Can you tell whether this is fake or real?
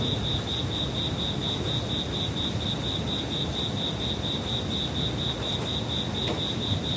real